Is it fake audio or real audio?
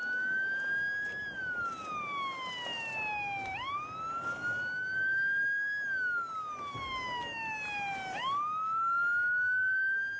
real